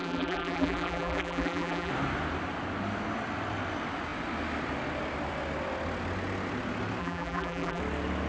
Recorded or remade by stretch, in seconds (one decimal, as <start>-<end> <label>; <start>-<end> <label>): 0.0-1.9 remade; 1.9-7.0 recorded; 7.0-7.8 remade; 7.8-8.3 recorded